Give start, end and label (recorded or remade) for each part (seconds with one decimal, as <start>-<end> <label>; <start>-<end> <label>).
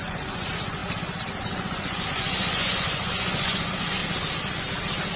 0.0-0.8 remade; 0.8-1.4 recorded; 1.4-4.0 remade; 4.0-5.2 recorded